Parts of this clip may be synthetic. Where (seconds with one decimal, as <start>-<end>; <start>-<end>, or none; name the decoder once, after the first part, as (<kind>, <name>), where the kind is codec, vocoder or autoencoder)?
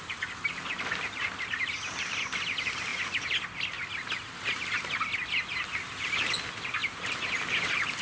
none